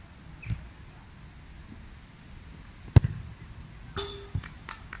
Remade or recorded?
recorded